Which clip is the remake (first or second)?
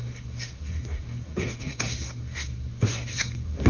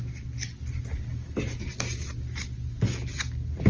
first